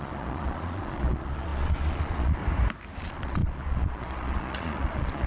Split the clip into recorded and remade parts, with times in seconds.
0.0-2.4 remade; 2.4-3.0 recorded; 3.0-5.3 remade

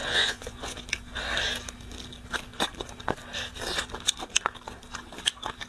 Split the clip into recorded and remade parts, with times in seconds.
0.0-0.8 remade; 0.8-5.7 recorded